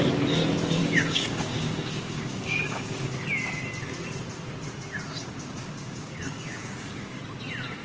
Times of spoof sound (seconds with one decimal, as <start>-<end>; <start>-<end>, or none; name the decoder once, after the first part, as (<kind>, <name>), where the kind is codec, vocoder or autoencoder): 0.8-3.1 (codec, DAC); 5.2-7.2